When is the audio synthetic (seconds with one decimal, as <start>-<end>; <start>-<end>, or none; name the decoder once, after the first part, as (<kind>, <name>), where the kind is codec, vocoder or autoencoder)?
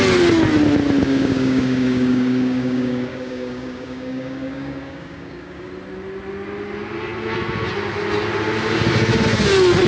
1.0-5.7 (codec, DAC)